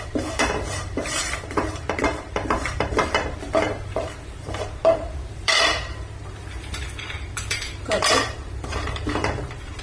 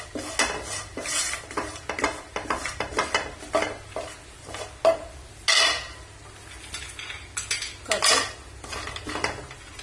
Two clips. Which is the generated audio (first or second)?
first